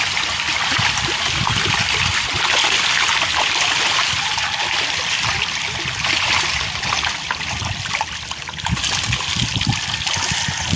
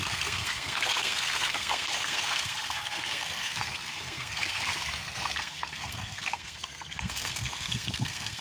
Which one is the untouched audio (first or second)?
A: first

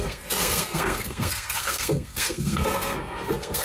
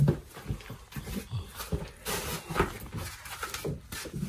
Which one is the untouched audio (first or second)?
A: second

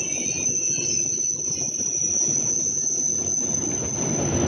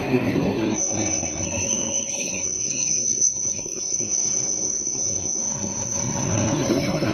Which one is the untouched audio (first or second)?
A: first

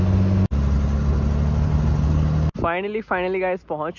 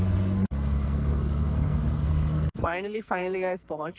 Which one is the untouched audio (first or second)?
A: first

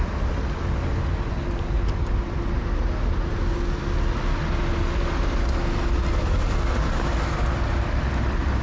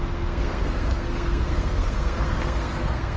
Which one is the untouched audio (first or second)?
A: first